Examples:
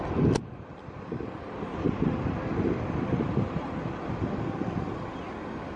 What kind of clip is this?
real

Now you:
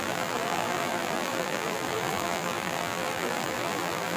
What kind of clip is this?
fake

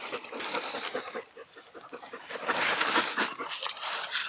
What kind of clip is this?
real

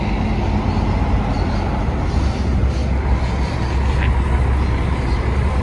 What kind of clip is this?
real